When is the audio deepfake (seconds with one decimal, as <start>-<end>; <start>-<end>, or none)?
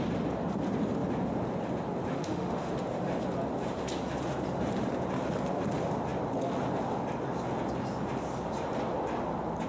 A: 2.1-2.7